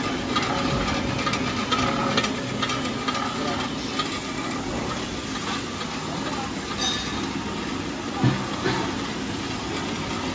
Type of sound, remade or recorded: recorded